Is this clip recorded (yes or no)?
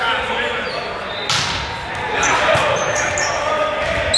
yes